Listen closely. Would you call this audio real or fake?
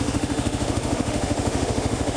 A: fake